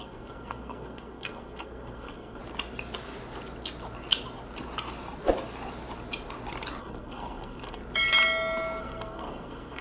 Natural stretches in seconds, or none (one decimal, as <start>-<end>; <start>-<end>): 2.4-6.8; 7.8-8.8